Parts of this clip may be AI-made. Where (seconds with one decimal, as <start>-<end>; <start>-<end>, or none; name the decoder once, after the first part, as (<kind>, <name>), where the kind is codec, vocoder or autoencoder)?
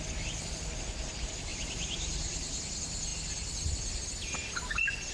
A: 1.5-2.6 (vocoder, BigVGAN v2)